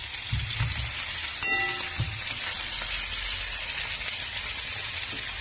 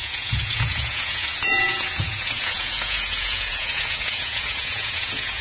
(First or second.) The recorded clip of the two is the first